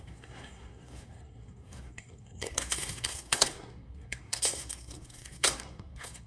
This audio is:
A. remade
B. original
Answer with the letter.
A